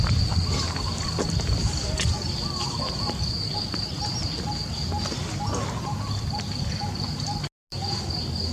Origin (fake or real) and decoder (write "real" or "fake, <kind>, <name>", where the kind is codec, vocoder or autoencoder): real